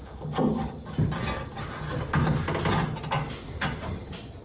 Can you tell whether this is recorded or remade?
recorded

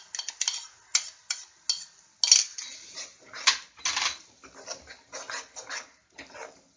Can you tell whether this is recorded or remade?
recorded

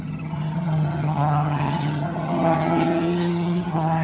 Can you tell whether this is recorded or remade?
remade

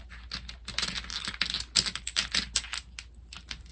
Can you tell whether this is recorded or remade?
recorded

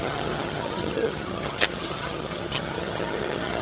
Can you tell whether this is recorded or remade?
remade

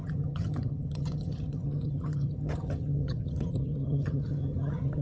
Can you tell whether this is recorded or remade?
remade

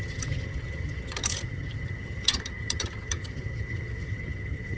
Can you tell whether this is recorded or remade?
remade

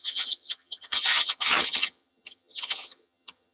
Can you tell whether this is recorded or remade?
remade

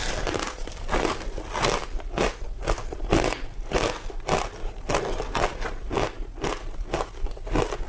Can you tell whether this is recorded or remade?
recorded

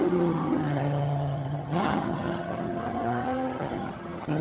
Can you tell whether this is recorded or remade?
remade